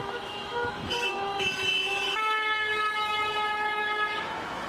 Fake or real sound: fake